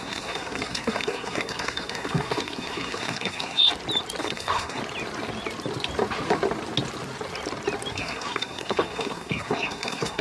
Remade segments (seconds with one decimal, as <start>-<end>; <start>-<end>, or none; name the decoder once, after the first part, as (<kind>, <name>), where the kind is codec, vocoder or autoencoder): 0.0-3.7 (codec, SNAC); 4.2-4.8; 7.9-10.2